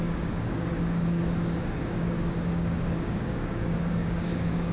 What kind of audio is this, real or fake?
fake